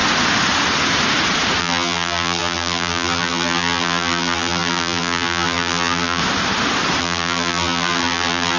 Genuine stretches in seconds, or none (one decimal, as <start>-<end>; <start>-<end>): 0.0-1.6; 6.2-7.0